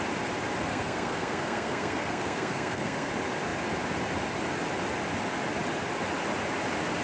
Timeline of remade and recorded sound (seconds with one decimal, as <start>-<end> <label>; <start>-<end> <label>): 0.0-0.7 recorded; 0.7-3.1 remade; 3.1-7.0 recorded